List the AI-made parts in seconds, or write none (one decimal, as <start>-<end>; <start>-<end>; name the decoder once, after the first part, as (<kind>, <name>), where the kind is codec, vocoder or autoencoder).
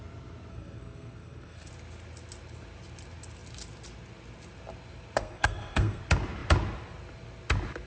0.5-1.7 (codec, SNAC); 5.2-6.0